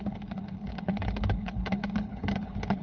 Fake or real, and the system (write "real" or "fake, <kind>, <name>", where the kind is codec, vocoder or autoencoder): fake, codec, HILCodec